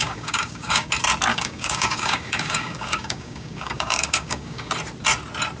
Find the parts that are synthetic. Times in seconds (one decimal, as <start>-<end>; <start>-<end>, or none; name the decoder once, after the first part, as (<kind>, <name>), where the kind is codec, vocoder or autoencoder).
0.0-0.9 (codec, DAC); 1.3-4.7